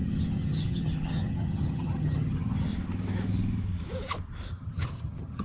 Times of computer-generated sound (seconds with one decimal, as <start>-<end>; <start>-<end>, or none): 0.0-2.7; 4.5-5.4